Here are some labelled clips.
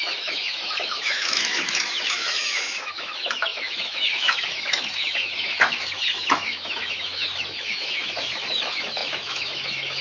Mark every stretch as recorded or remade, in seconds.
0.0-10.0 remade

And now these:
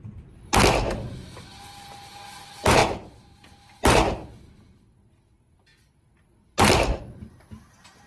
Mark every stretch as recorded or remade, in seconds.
0.0-2.8 recorded; 2.8-3.5 remade; 3.5-8.1 recorded

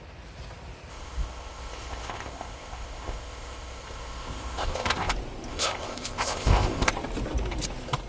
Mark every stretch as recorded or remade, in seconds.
0.0-0.9 recorded; 0.9-5.1 remade; 5.1-5.5 recorded; 5.5-6.9 remade; 6.9-8.1 recorded

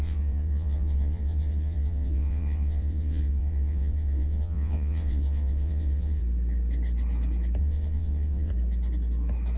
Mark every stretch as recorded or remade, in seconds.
0.0-6.2 remade; 6.2-7.6 recorded; 7.6-8.5 remade; 8.5-9.6 recorded

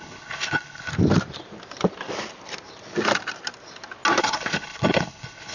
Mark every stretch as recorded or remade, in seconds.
0.0-0.9 remade; 0.9-4.2 recorded; 4.2-5.5 remade